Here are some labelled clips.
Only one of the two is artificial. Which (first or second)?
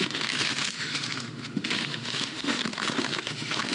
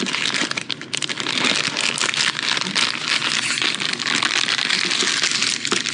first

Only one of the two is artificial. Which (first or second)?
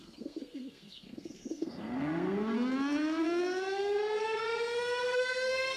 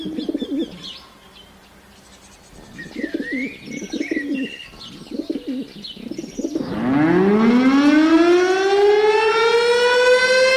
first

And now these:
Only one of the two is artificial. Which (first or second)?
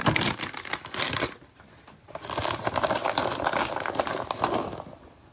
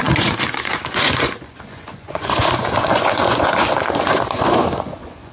second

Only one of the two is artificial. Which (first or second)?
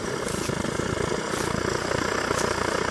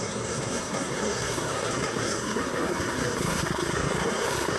second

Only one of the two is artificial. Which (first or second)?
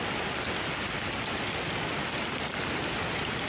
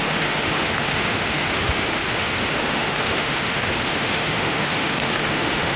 second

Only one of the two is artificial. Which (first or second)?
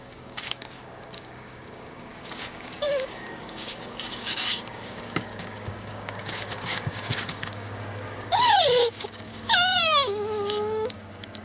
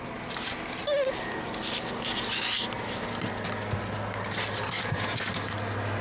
first